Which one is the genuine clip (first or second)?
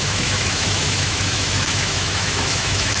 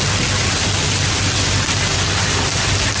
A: second